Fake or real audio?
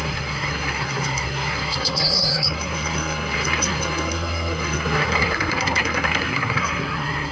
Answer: fake